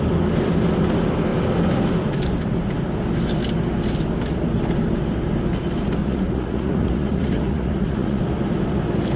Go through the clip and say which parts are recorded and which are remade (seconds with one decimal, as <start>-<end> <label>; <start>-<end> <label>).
0.0-6.0 recorded; 6.0-8.2 remade; 8.2-9.2 recorded